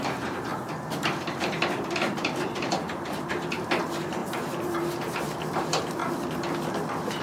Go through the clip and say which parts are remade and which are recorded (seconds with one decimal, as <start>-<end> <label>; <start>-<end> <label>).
0.0-0.5 remade; 0.5-1.4 recorded; 1.4-6.0 remade; 6.0-7.2 recorded